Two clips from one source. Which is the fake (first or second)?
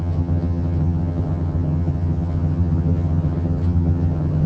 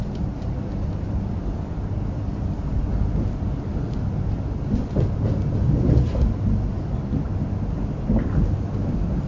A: first